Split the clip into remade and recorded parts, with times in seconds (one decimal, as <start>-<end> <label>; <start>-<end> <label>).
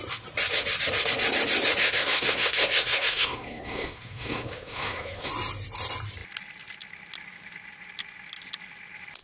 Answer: 0.0-1.8 recorded; 1.8-5.3 remade; 5.3-9.2 recorded